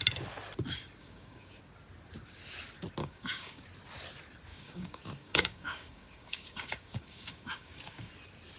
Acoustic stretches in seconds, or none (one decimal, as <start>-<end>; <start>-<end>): 0.0-1.0; 1.6-3.0; 3.6-4.5; 8.1-8.6